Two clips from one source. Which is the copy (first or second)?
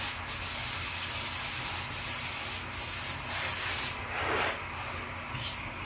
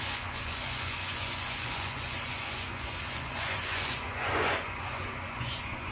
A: second